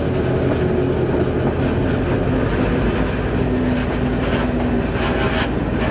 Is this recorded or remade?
recorded